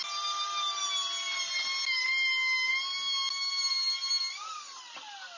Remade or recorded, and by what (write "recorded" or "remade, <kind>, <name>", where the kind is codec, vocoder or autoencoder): recorded